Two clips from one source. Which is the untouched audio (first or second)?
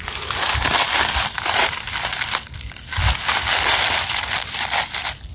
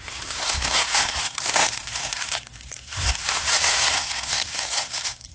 first